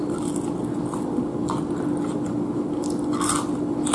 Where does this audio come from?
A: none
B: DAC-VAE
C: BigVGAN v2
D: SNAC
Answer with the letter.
A